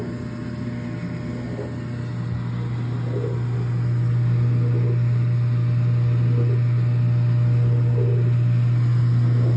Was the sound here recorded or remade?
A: recorded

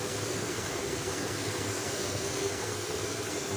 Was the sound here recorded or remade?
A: remade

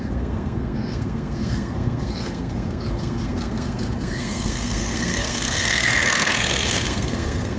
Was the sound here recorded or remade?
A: remade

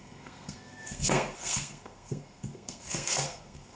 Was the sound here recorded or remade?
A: remade